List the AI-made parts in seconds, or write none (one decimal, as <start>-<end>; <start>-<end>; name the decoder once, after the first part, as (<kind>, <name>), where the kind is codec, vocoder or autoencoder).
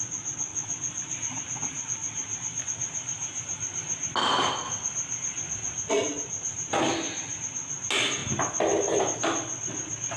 none